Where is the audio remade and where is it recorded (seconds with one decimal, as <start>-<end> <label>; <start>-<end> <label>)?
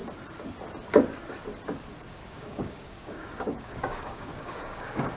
0.0-2.0 recorded; 2.0-5.2 remade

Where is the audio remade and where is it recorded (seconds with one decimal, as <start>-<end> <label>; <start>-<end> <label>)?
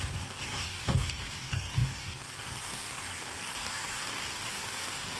0.0-5.2 remade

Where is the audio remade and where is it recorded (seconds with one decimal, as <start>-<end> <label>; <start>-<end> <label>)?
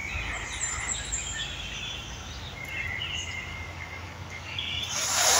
0.0-3.5 recorded; 3.5-4.8 remade; 4.8-5.4 recorded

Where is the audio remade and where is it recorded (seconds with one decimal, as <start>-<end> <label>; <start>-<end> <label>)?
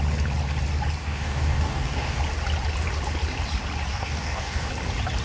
0.0-1.0 recorded; 1.0-2.2 remade; 2.2-3.9 recorded; 3.9-4.7 remade; 4.7-5.2 recorded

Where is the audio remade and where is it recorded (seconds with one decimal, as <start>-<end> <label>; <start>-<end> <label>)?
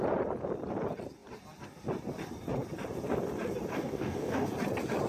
0.0-3.7 recorded; 3.7-4.5 remade; 4.5-5.1 recorded